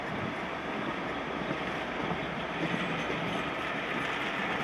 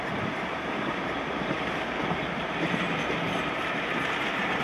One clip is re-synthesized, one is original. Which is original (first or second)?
first